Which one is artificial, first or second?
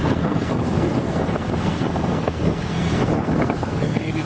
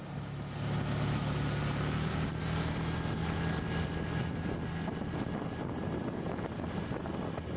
first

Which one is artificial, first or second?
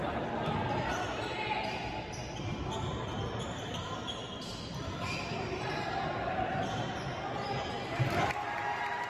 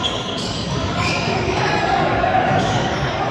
second